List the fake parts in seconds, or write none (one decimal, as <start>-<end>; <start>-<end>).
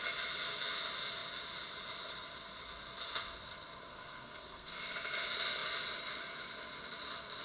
3.9-4.8